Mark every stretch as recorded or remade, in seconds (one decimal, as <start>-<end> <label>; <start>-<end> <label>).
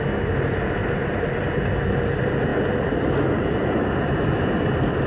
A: 0.0-0.8 recorded; 0.8-1.4 remade; 1.4-5.1 recorded